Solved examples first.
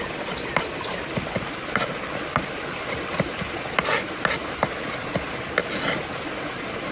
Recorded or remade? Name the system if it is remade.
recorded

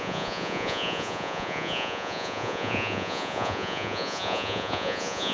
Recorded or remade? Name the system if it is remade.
remade, vocoder, Vocos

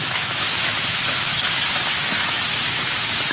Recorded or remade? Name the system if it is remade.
remade, autoencoder, DAC-VAE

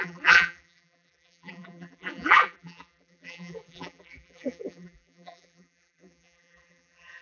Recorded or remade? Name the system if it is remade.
remade, vocoder, BigVGAN v2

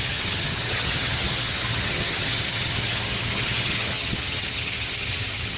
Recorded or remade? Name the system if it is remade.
remade, vocoder, HiFi-GAN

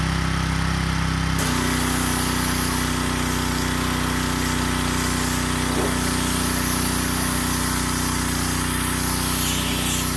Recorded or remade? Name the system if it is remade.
recorded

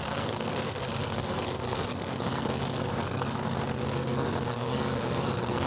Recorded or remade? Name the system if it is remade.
remade, codec, SNAC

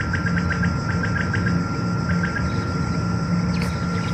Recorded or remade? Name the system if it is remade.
recorded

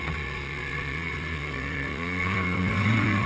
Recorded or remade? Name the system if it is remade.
remade, vocoder, WaveNeXt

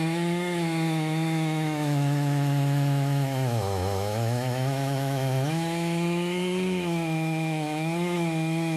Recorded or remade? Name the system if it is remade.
remade, autoencoder, DAC-VAE